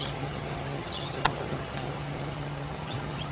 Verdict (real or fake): fake